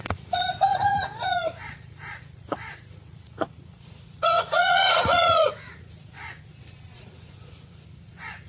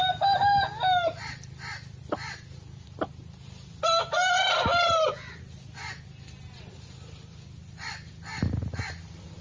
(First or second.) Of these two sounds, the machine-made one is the first